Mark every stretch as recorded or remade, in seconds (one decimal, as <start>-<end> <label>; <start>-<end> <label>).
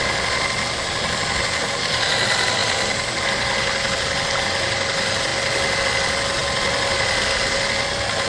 0.0-8.3 recorded